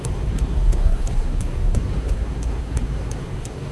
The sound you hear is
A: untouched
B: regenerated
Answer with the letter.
B